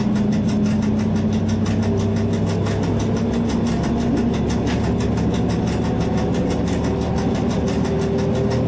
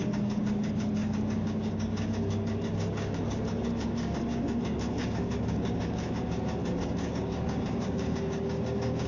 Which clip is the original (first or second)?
first